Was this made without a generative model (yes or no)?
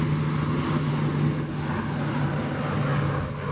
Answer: yes